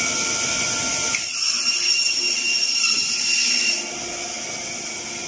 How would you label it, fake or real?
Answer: real